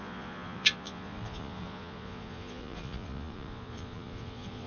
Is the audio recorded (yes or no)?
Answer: no